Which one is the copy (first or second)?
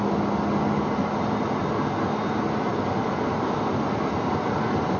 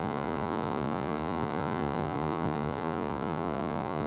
second